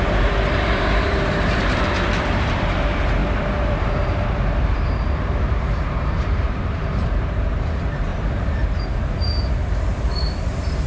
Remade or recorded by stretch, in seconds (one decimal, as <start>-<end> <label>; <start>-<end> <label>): 0.0-10.9 remade